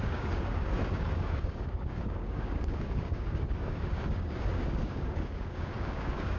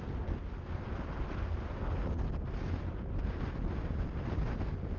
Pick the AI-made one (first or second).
first